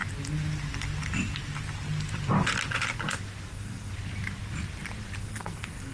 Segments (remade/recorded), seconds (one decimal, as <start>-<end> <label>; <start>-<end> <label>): 0.0-3.5 recorded; 3.5-3.9 remade; 3.9-5.2 recorded; 5.2-5.9 remade